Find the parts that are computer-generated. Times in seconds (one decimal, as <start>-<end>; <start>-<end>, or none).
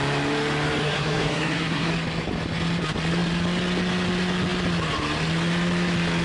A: 0.8-1.9